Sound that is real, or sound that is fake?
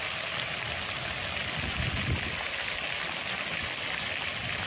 real